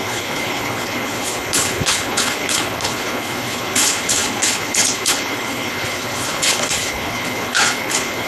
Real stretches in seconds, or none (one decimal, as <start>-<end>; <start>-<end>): none